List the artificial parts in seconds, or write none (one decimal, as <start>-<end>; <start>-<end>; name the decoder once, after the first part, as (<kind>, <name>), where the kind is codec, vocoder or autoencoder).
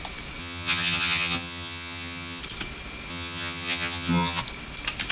0.4-2.4 (vocoder, HiFi-GAN); 3.1-4.4